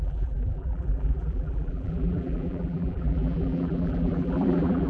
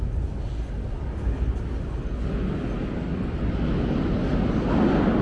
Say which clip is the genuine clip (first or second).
second